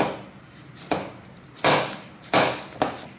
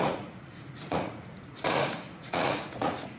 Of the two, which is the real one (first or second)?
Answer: first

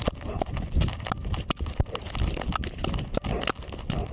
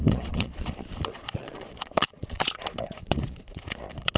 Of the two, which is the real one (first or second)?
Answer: first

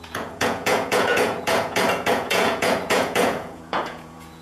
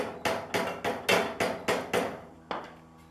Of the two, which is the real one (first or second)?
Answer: second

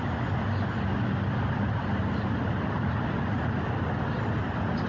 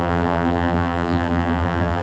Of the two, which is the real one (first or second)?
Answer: first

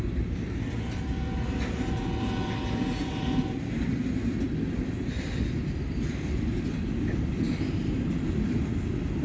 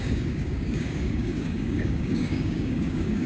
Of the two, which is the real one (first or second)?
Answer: first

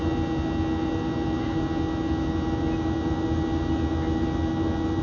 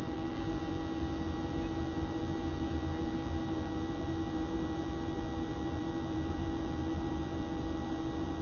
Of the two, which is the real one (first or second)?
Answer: first